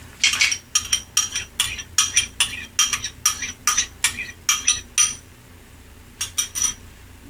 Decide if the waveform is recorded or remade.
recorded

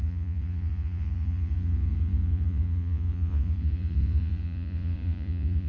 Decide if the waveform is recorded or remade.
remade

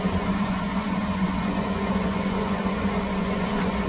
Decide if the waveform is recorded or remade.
remade